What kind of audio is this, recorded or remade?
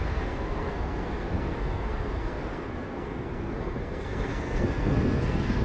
remade